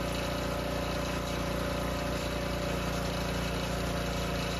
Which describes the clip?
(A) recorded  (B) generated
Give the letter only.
A